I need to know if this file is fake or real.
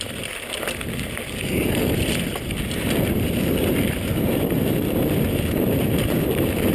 real